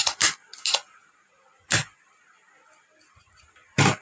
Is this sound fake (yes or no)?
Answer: no